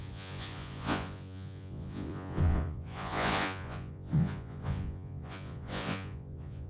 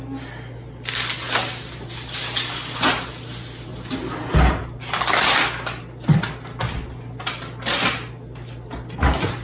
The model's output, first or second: first